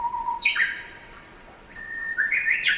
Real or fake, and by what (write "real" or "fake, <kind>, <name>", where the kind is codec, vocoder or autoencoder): fake, vocoder, WaveNeXt